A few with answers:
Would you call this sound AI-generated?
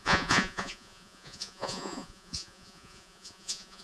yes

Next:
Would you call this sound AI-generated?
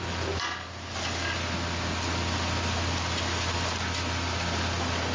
no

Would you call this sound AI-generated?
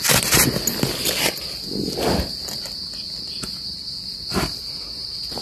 no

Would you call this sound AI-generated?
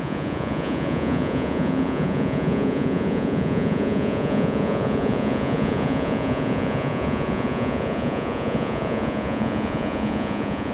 yes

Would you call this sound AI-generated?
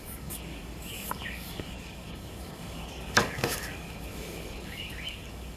yes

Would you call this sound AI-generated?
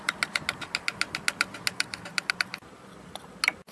no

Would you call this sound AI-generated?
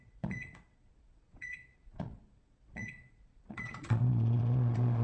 yes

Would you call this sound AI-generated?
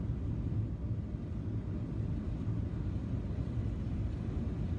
no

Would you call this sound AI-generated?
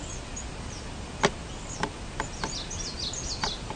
no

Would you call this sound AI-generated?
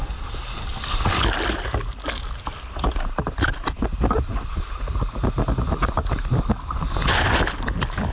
no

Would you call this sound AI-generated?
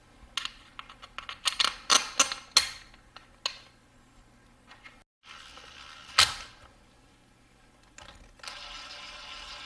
no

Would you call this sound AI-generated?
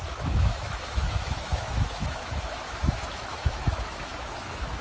yes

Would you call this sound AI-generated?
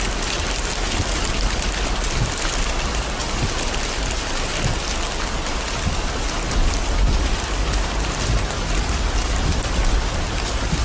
no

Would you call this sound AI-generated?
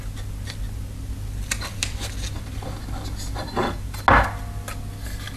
no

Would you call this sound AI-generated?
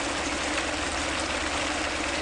no